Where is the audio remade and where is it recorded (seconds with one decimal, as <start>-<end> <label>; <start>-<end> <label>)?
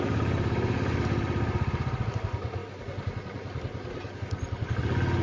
0.0-5.2 recorded